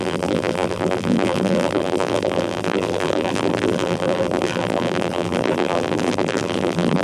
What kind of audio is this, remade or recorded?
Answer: remade